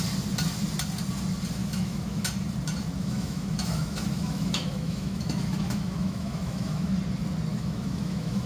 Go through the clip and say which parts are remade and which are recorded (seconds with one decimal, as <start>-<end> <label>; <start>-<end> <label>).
0.0-1.6 recorded; 1.6-2.2 remade; 2.2-3.0 recorded; 3.0-6.9 remade; 6.9-7.5 recorded; 7.5-8.5 remade